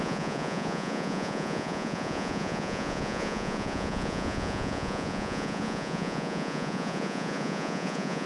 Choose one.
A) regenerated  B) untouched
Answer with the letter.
A